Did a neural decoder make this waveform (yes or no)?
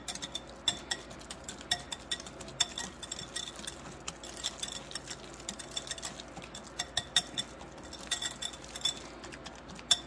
no